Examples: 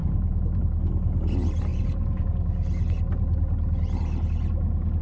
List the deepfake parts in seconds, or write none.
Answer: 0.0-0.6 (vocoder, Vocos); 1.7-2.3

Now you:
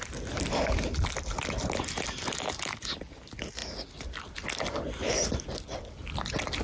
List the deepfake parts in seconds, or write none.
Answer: none

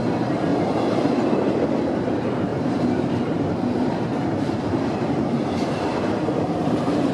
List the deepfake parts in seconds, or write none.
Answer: 0.5-1.1 (vocoder, BigVGAN v2); 2.5-7.1

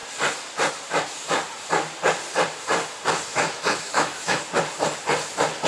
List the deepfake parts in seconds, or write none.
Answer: 3.3-4.4 (autoencoder, DAC-VAE)